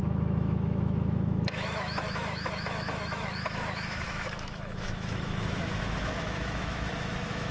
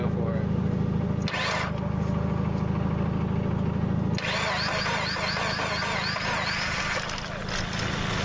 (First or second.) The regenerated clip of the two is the first